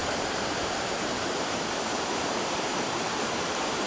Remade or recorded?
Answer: remade